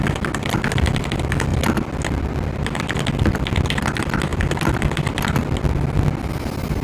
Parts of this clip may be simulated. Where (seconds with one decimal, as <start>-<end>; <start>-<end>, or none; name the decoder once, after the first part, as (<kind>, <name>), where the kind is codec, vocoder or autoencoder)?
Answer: none